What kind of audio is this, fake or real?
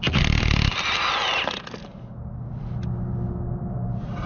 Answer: real